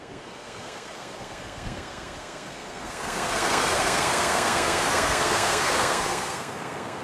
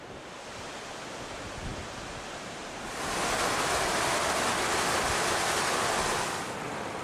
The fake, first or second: first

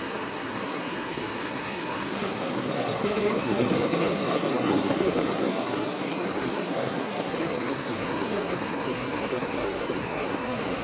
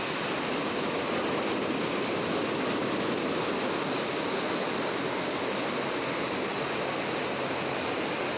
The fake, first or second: first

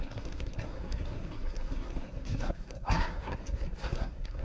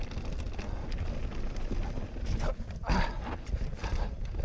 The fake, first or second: first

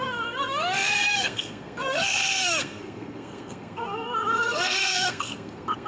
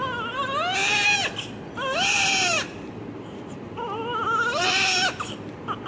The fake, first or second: first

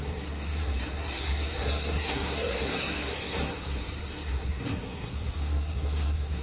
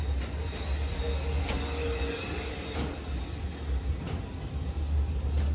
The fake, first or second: first